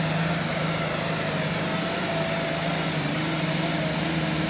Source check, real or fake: real